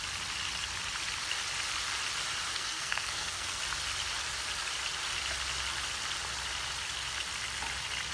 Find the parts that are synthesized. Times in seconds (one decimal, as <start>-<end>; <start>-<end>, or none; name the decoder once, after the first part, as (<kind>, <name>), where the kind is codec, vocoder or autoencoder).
2.5-3.6 (codec, SNAC)